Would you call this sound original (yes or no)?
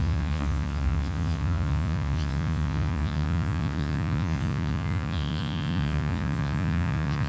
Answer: no